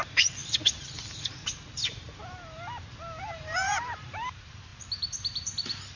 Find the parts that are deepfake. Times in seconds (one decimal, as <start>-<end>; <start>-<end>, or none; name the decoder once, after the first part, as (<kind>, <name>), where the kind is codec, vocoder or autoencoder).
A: 0.0-0.4 (vocoder, BigVGAN v2); 3.2-6.0